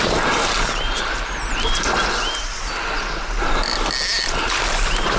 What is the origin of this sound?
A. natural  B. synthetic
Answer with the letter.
A